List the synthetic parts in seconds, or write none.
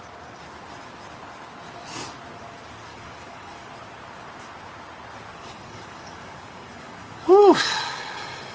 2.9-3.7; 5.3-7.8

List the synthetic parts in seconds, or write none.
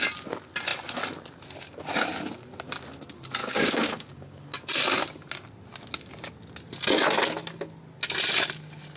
3.4-4.4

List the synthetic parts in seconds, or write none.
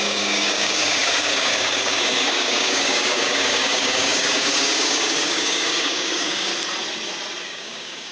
0.0-6.5; 7.4-8.1